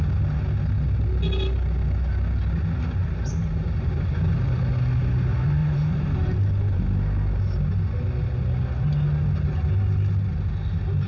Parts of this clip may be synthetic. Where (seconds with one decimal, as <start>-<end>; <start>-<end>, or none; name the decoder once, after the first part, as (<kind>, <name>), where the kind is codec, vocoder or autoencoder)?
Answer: 3.0-4.6 (vocoder, BigVGAN v2); 5.6-6.8